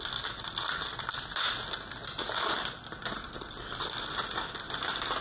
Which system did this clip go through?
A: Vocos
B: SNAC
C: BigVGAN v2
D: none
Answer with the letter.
D